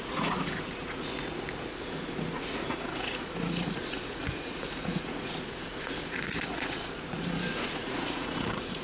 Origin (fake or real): fake